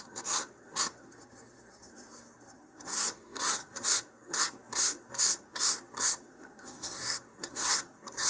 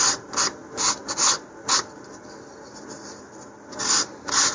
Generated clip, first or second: first